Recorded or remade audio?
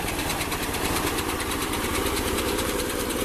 remade